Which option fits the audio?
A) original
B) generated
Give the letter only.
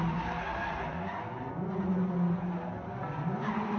A